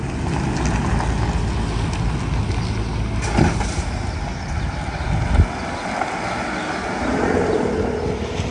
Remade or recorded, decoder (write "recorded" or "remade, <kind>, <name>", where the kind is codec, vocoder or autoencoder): recorded